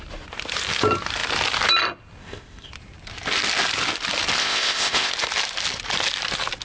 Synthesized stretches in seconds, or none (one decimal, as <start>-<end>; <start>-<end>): 2.2-2.7; 4.4-5.1